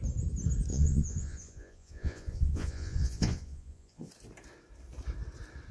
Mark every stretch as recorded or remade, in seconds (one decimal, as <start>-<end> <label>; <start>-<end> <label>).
0.0-0.7 recorded; 0.7-4.1 remade; 4.1-5.7 recorded